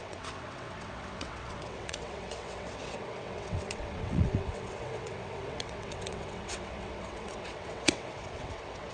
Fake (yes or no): yes